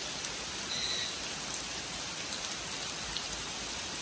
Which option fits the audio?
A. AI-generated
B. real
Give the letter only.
B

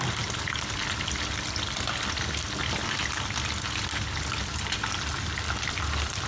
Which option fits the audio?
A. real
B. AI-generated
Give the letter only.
A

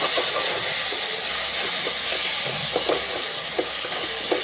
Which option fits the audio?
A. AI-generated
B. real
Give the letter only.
B